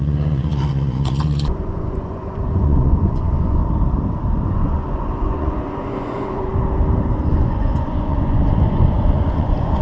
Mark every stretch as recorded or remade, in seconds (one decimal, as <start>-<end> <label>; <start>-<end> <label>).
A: 0.0-3.6 remade; 3.6-4.5 recorded; 4.5-6.5 remade; 6.5-7.3 recorded; 7.3-9.8 remade